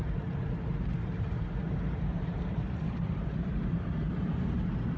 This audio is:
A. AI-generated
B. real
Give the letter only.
A